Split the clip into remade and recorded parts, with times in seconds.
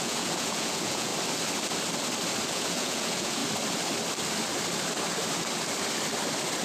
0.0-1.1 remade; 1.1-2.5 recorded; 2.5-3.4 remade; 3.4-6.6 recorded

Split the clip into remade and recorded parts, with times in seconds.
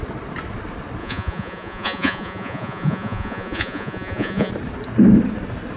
0.0-1.0 recorded; 1.0-4.5 remade; 4.5-5.8 recorded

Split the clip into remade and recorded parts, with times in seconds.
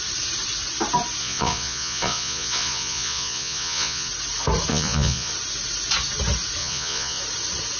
0.0-1.2 recorded; 1.2-4.1 remade; 4.1-4.7 recorded; 4.7-5.3 remade; 5.3-6.6 recorded; 6.6-7.2 remade; 7.2-7.8 recorded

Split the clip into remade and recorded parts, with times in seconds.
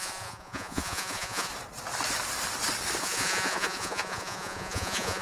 0.0-1.5 remade; 1.5-3.0 recorded; 3.0-5.2 remade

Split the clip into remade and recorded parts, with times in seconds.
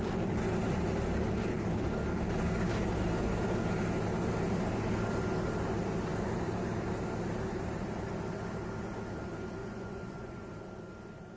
0.0-9.6 recorded; 9.6-10.5 remade; 10.5-11.4 recorded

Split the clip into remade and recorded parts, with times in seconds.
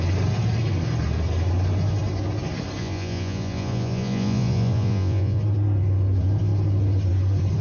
0.0-2.8 recorded; 2.8-5.4 remade; 5.4-7.6 recorded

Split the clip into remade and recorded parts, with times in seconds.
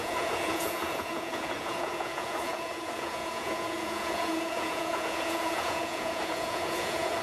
0.0-7.2 remade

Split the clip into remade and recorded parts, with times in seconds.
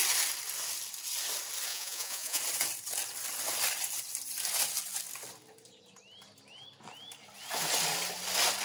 0.0-1.7 recorded; 1.7-2.4 remade; 2.4-8.6 recorded